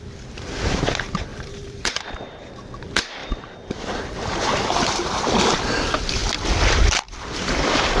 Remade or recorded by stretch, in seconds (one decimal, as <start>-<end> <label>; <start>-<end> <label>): 0.0-1.3 recorded; 1.3-2.0 remade; 2.0-3.2 recorded; 3.2-5.2 remade; 5.2-8.0 recorded